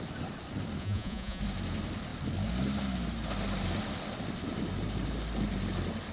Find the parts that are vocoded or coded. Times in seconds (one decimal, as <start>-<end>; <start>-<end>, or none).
0.8-1.4